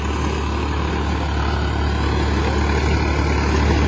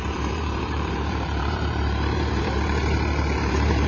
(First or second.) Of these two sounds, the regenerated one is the second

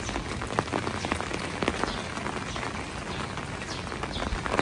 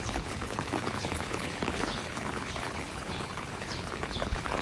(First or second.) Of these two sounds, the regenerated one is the second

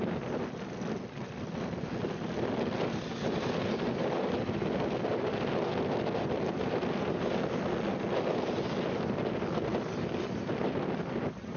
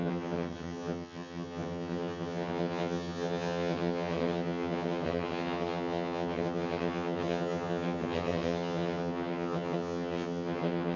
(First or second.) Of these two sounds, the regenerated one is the second